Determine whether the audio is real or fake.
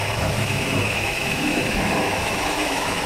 fake